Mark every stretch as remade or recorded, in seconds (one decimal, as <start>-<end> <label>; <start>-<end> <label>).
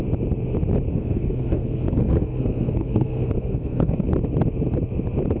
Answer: 0.0-0.9 recorded; 0.9-4.1 remade; 4.1-5.4 recorded